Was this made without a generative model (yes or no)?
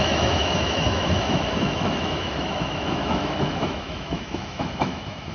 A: no